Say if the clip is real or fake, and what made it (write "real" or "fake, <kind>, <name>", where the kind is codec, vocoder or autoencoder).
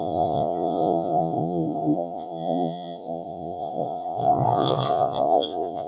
fake, vocoder, Vocos